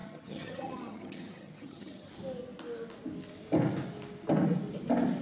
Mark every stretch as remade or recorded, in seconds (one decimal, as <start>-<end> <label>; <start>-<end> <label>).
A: 0.0-2.1 remade; 2.1-5.2 recorded